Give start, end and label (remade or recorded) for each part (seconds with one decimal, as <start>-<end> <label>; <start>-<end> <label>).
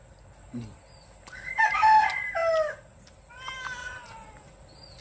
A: 0.0-3.8 recorded; 3.8-4.4 remade; 4.4-5.0 recorded